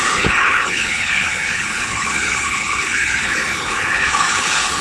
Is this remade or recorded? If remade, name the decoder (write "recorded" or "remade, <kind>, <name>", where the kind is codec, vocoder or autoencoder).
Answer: remade, codec, HILCodec